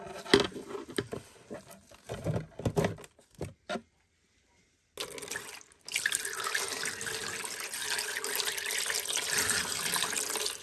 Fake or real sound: real